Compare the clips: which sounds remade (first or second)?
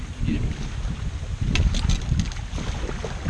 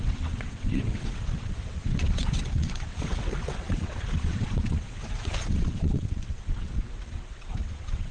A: second